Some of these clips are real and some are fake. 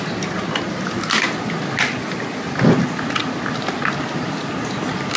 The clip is real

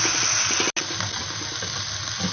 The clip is real